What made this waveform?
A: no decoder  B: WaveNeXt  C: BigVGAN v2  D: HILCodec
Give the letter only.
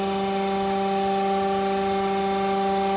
A